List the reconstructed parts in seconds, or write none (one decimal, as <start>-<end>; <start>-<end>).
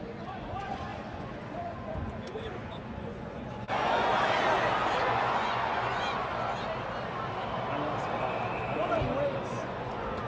0.0-4.1; 5.0-6.3; 9.5-10.3